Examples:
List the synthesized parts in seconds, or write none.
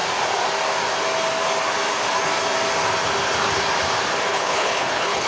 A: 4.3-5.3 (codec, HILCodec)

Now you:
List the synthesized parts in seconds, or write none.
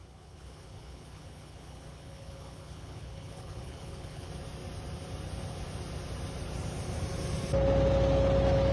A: 0.0-4.3 (codec, HILCodec)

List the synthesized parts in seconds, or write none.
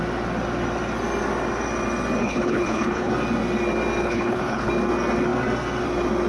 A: 2.2-3.1 (codec, HILCodec); 4.0-4.7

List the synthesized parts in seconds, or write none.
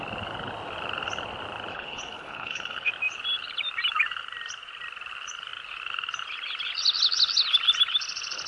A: 1.7-2.9 (codec, HILCodec)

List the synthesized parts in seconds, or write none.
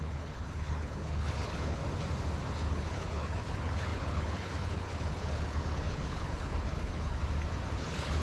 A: 0.0-1.8 (codec, HILCodec); 2.5-7.2; 7.7-8.2